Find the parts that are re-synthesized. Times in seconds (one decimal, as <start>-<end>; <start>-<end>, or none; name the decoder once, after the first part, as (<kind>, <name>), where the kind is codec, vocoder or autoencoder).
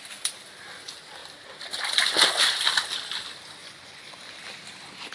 3.6-4.2 (vocoder, Vocos)